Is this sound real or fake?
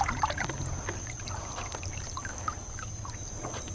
real